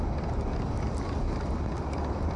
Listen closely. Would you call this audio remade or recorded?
remade